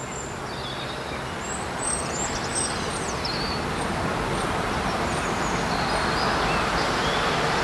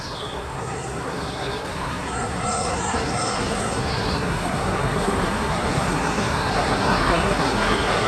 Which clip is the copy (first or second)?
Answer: second